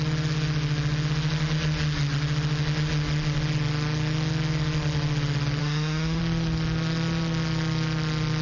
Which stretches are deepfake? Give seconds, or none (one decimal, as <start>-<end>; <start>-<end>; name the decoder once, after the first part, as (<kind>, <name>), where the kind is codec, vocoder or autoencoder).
5.6-6.2 (autoencoder, DAC-VAE)